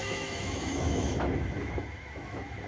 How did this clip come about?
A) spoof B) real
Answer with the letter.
A